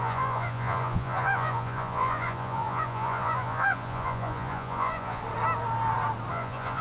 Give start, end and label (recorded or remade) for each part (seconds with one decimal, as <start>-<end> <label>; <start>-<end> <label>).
0.0-5.2 remade; 5.2-6.3 recorded; 6.3-6.8 remade